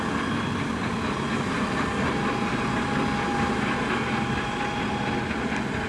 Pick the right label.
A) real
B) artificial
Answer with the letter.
A